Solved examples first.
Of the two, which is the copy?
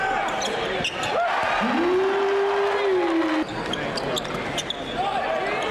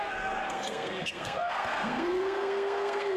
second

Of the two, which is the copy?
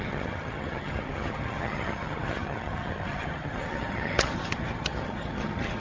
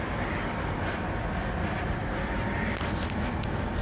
first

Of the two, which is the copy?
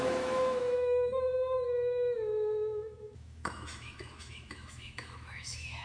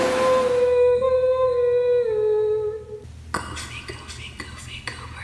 first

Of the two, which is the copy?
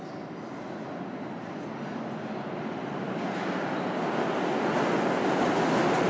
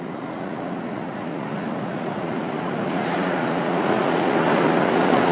second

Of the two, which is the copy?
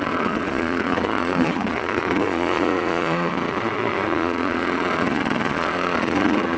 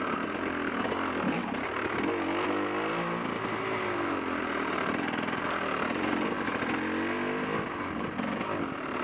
first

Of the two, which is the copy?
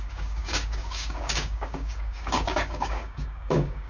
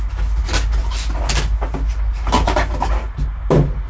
first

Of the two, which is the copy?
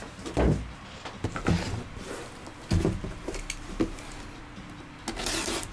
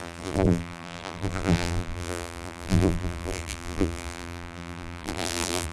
second